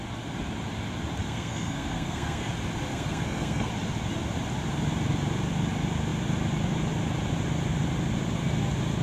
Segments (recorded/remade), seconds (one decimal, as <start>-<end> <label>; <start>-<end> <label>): 0.0-1.2 recorded; 1.2-2.5 remade; 2.5-2.9 recorded; 2.9-3.7 remade; 3.7-9.0 recorded